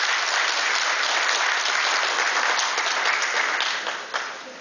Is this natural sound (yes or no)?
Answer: yes